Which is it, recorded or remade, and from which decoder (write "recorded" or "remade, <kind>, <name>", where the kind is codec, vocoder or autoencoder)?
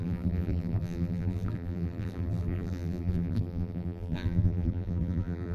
remade, vocoder, BigVGAN v2